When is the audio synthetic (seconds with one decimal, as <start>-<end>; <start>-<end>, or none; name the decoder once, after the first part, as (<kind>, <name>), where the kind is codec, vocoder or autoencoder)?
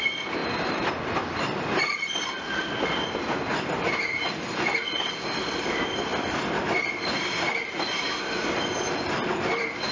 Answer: 0.4-0.9 (vocoder, BigVGAN v2)